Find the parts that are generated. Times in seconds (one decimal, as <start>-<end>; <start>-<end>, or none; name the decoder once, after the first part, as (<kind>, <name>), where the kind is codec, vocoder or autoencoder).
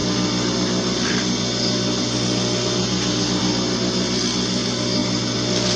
none